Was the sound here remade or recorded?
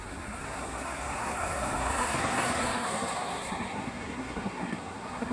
remade